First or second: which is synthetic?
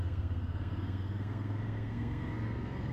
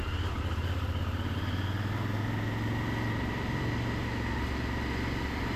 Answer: first